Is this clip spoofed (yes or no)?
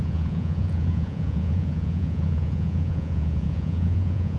yes